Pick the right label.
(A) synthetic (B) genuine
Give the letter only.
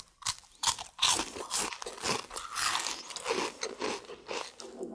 B